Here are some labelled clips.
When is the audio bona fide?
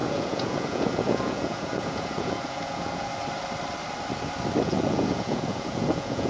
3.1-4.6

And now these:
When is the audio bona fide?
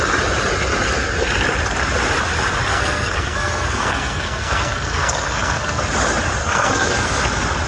0.0-2.7; 5.8-6.4; 7.2-7.7